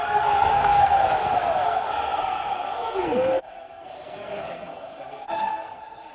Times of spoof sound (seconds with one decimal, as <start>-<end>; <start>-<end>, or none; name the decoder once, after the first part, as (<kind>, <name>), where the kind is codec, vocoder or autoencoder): 0.0-6.1 (codec, SNAC)